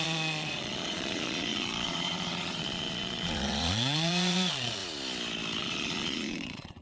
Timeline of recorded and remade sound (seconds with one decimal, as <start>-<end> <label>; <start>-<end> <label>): 0.0-4.8 remade; 4.8-5.6 recorded; 5.6-6.8 remade